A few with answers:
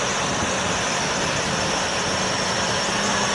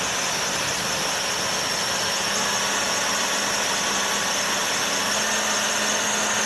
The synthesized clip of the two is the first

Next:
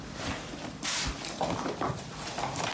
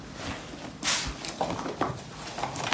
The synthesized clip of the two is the first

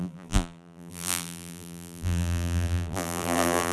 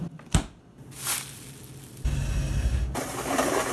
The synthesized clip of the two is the first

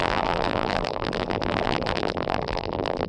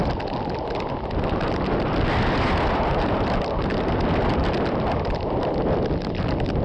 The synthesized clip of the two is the first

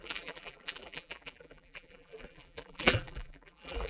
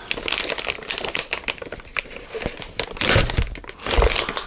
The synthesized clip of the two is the first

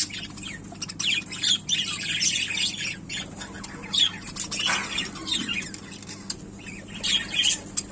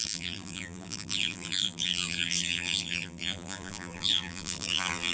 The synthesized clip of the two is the second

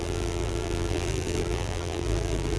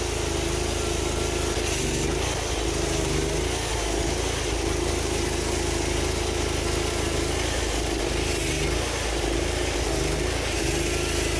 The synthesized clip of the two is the first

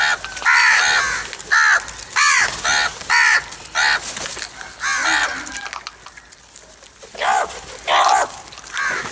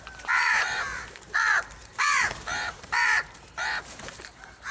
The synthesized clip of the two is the second